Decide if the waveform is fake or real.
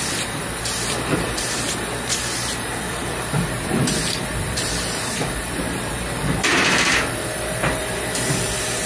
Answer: fake